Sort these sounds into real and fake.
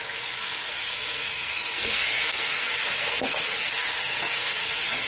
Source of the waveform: fake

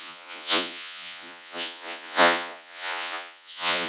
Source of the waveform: fake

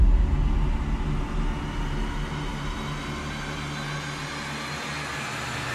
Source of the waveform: real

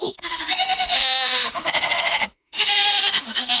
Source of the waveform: fake